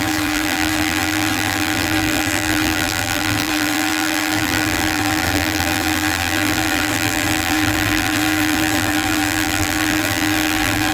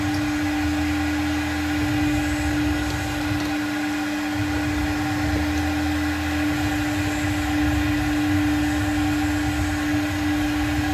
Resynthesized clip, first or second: first